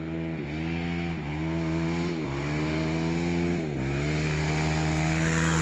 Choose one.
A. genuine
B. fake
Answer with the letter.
A